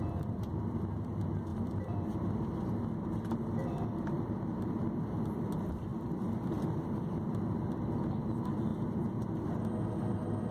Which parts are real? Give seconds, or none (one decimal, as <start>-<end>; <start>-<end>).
0.0-1.5; 2.7-3.6; 4.3-5.9; 7.6-8.7; 9.5-10.5